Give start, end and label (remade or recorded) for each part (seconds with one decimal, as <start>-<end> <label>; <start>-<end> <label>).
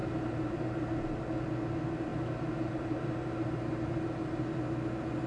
0.0-1.2 remade; 1.2-2.1 recorded; 2.1-4.6 remade; 4.6-5.3 recorded